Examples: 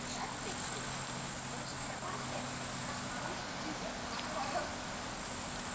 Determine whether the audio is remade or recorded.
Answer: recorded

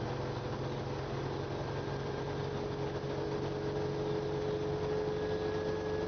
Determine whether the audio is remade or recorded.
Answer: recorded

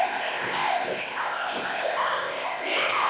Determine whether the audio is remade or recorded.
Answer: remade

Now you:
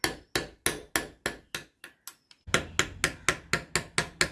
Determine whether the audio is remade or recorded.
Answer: recorded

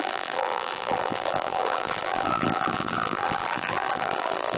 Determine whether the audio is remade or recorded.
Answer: remade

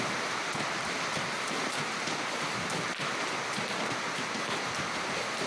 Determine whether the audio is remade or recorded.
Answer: recorded